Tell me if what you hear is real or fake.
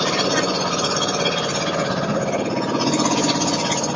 fake